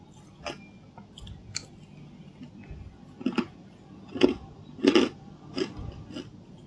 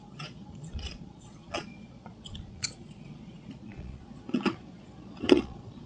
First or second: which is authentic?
first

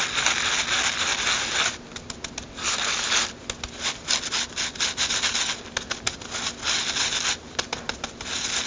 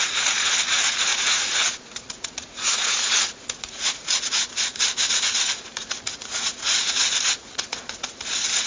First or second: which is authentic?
first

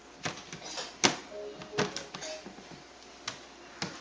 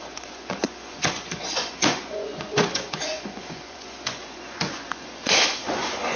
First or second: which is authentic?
first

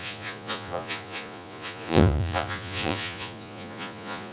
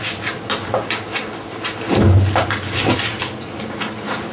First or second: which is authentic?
second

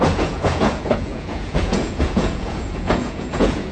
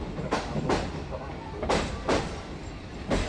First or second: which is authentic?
second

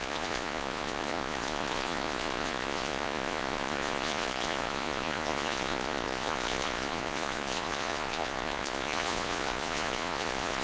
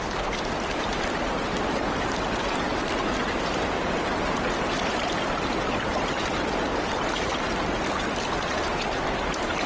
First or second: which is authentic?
second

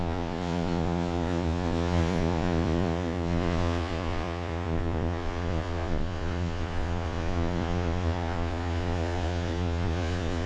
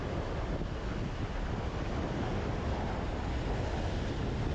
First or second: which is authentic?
second